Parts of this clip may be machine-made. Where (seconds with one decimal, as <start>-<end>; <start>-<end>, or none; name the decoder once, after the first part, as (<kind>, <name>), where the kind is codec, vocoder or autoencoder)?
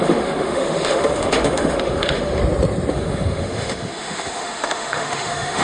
0.0-2.4 (autoencoder, DAC-VAE); 2.9-5.6